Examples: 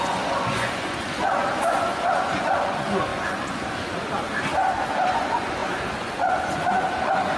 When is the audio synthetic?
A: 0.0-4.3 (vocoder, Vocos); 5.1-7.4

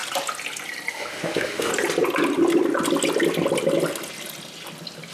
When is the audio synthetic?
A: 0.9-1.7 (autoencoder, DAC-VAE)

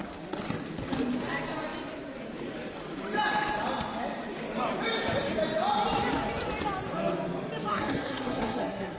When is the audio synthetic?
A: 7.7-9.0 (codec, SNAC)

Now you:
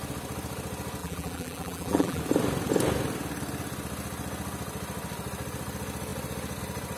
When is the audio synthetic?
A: 1.0-2.2 (vocoder, BigVGAN v2)